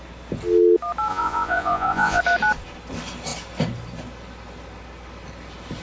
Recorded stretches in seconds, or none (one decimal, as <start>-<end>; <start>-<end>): 0.0-1.1; 2.2-5.8